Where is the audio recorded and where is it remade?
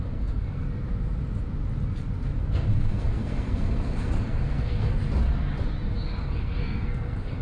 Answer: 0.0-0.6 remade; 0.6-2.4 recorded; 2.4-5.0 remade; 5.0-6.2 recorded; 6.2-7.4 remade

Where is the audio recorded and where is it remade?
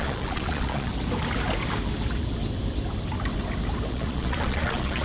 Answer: 0.0-0.9 remade; 0.9-3.9 recorded; 3.9-5.0 remade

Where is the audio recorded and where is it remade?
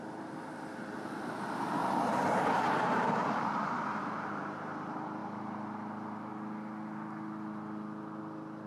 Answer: 0.0-1.8 recorded; 1.8-4.5 remade; 4.5-8.7 recorded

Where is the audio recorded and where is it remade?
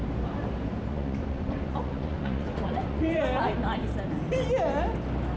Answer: 0.0-0.9 recorded; 0.9-3.2 remade; 3.2-5.4 recorded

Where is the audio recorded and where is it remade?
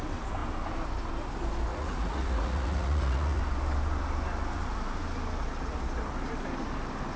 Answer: 0.0-1.7 recorded; 1.7-3.4 remade; 3.4-7.2 recorded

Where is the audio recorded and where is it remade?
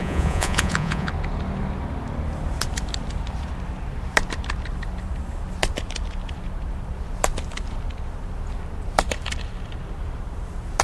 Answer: 0.0-1.1 remade; 1.1-10.8 recorded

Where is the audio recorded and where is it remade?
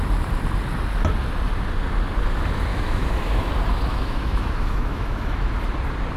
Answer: 0.0-2.7 recorded; 2.7-3.5 remade; 3.5-3.9 recorded; 3.9-5.5 remade; 5.5-6.2 recorded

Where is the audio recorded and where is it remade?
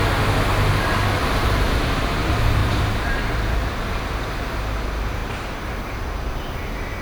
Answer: 0.0-1.2 recorded; 1.2-2.0 remade; 2.0-2.6 recorded; 2.6-3.8 remade; 3.8-5.2 recorded; 5.2-6.3 remade; 6.3-7.0 recorded